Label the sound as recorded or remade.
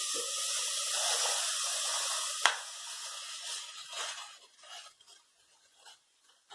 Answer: remade